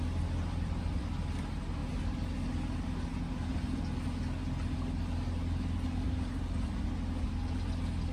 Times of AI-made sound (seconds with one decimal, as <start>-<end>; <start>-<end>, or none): none